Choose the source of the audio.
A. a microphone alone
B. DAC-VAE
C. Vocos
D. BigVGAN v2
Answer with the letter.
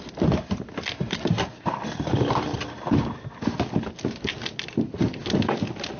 A